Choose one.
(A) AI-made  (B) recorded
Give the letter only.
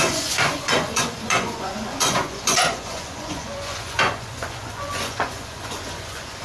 A